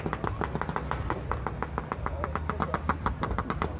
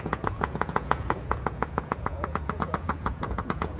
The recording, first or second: first